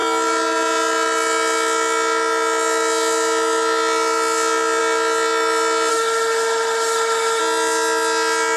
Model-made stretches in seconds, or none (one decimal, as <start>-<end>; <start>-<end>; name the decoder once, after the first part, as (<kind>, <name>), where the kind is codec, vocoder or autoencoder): 5.9-7.4 (autoencoder, DAC-VAE)